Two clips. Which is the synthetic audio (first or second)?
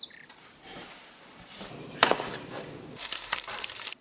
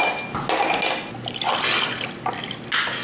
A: first